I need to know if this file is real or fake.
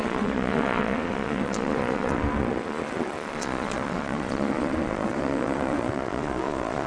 fake